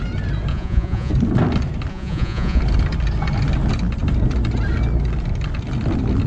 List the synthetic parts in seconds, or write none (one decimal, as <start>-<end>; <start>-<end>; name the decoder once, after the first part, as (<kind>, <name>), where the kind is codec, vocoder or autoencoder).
0.5-1.1 (vocoder, Vocos); 1.9-2.6